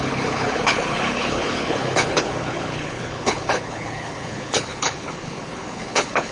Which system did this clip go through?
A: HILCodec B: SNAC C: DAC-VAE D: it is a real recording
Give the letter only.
A